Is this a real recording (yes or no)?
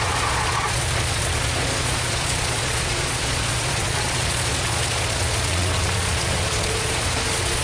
no